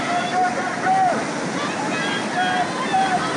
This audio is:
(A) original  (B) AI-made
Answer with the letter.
A